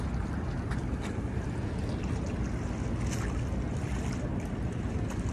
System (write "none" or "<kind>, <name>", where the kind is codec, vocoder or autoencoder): none